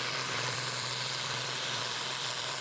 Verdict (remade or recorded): remade